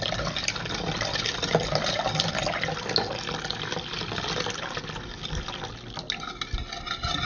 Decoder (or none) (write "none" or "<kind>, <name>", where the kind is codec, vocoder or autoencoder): none